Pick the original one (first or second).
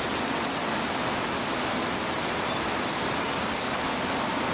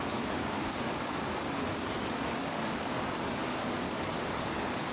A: first